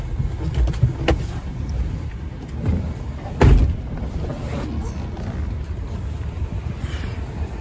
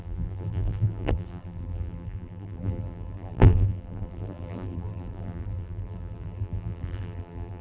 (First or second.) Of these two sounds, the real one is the first